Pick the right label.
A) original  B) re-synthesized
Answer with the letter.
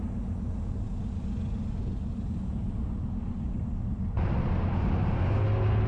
A